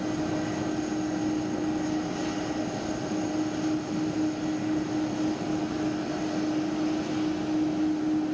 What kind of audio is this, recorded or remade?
recorded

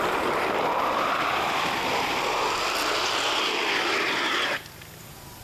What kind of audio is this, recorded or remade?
recorded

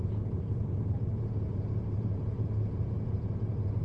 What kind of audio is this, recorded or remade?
remade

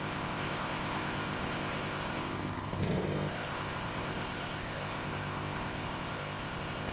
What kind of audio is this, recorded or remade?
remade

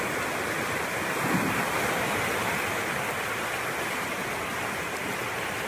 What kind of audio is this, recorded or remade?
recorded